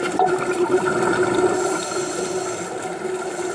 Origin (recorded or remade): recorded